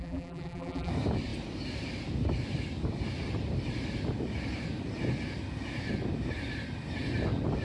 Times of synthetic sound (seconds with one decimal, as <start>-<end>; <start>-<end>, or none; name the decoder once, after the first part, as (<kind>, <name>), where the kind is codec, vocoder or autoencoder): 0.0-0.9 (vocoder, BigVGAN v2)